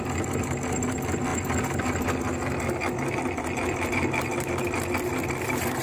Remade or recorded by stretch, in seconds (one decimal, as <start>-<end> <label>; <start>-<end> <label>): 0.0-5.8 recorded